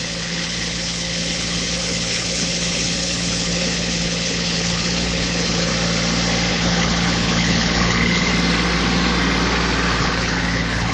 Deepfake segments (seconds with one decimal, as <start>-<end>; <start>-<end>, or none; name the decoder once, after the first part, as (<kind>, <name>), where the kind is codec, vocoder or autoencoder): 0.0-5.7 (codec, HILCodec); 6.5-8.3; 10.0-10.9